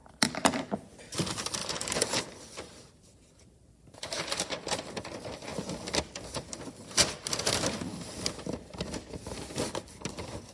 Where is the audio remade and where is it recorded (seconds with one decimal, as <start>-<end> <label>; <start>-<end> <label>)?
0.0-1.6 recorded; 1.6-4.9 remade; 4.9-10.5 recorded